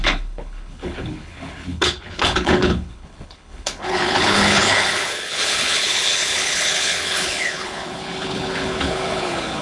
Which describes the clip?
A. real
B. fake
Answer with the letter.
B